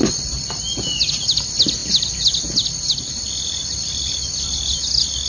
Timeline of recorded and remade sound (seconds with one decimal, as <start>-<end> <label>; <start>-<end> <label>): 0.0-5.3 recorded